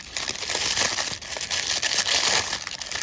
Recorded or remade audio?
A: recorded